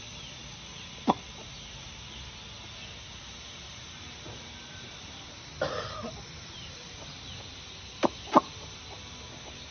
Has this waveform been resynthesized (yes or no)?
no